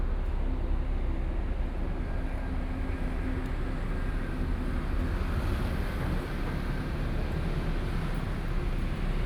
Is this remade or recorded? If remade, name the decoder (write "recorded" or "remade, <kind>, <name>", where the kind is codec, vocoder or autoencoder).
recorded